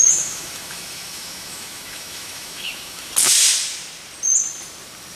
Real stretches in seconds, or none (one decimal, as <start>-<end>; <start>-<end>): 3.1-5.2